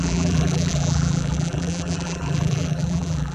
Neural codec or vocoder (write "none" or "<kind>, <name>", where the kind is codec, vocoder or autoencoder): vocoder, BigVGAN v2